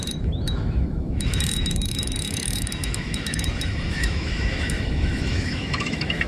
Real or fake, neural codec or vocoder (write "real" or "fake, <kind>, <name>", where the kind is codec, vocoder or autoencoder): fake, autoencoder, DAC-VAE